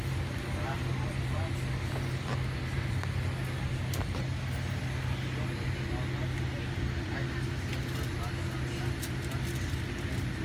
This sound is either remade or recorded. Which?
recorded